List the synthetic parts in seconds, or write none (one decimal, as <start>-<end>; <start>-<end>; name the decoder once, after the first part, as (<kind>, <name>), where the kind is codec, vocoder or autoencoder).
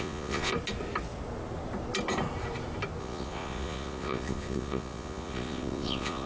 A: 0.0-0.5 (vocoder, Vocos); 3.0-6.3